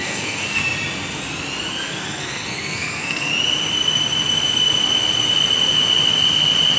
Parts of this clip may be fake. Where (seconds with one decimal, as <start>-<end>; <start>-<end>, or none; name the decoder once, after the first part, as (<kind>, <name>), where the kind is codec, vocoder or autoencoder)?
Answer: 0.0-0.6 (codec, SNAC); 1.8-3.3